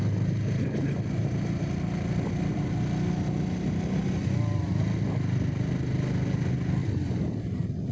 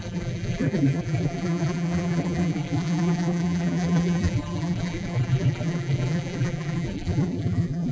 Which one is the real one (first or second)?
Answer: first